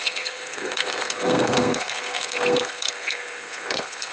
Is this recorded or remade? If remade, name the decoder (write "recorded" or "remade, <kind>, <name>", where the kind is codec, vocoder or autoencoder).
remade, codec, SNAC